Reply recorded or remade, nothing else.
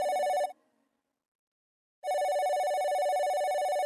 recorded